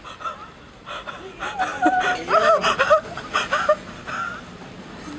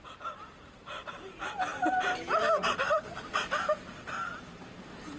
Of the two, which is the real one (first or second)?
first